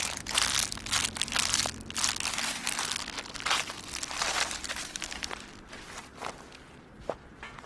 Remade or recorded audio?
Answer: recorded